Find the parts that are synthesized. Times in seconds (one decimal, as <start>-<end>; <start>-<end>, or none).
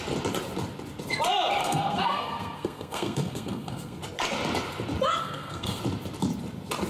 1.6-4.0; 5.2-5.8